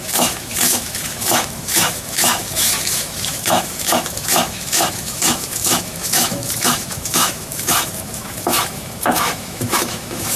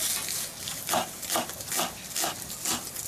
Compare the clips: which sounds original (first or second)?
second